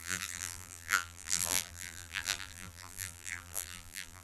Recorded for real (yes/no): no